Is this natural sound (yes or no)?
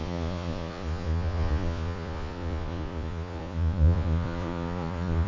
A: no